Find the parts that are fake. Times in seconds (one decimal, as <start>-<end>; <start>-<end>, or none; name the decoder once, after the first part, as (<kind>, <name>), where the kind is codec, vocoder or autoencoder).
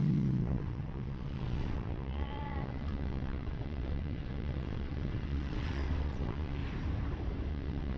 0.0-6.6 (vocoder, WaveNeXt); 7.5-8.0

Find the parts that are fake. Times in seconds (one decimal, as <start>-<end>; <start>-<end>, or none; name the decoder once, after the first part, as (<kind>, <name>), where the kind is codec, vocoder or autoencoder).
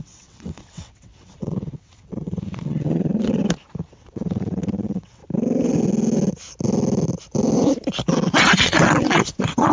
0.0-3.4 (vocoder, WaveNeXt); 3.9-5.2; 8.3-9.7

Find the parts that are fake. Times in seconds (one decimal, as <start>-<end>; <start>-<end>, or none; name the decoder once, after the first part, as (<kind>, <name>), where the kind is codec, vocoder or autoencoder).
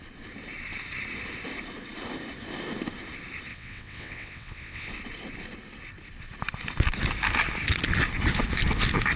3.5-4.9 (vocoder, WaveNeXt)